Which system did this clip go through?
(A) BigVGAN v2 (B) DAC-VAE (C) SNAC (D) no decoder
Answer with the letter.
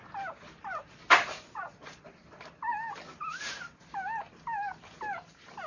D